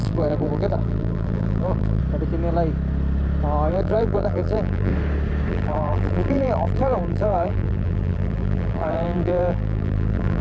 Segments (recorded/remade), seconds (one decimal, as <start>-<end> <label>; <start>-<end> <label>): 0.0-2.0 remade; 2.0-3.7 recorded; 3.7-4.9 remade; 4.9-5.5 recorded; 5.5-10.4 remade